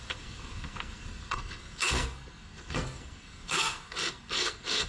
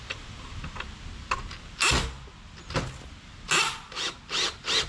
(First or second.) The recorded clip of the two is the second